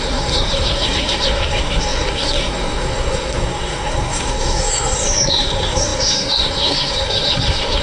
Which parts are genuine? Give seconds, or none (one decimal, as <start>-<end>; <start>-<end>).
none